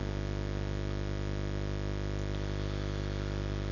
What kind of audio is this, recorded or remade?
recorded